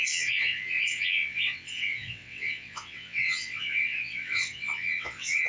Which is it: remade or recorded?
remade